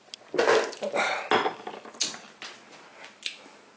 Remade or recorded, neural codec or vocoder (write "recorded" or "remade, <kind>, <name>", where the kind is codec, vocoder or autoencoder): recorded